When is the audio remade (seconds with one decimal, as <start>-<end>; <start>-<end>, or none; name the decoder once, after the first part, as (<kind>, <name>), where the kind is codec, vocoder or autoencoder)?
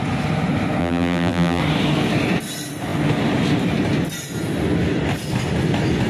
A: 0.8-1.6 (vocoder, BigVGAN v2)